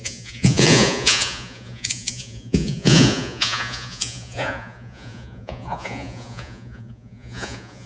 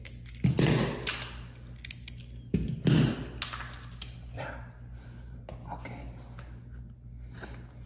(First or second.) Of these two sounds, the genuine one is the second